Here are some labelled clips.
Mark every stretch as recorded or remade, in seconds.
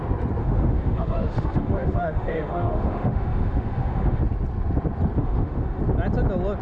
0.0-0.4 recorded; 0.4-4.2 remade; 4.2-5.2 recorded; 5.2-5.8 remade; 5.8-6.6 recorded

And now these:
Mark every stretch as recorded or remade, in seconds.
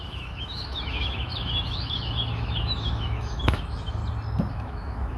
0.0-4.0 remade; 4.0-4.5 recorded; 4.5-5.2 remade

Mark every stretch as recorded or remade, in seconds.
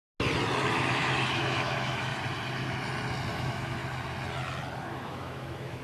0.0-0.7 recorded; 0.7-2.1 remade; 2.1-3.3 recorded; 3.3-3.8 remade; 3.8-4.8 recorded; 4.8-5.8 remade